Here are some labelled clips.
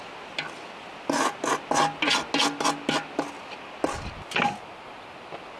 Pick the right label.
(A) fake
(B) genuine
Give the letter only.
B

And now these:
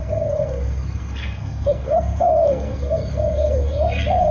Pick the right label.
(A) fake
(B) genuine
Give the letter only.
A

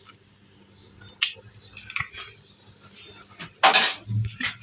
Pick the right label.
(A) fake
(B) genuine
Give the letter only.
B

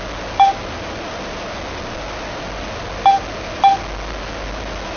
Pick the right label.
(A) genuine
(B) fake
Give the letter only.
A